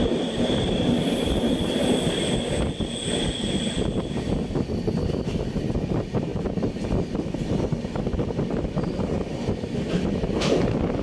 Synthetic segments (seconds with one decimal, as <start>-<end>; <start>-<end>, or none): none